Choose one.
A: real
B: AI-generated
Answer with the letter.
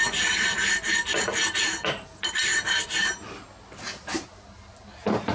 A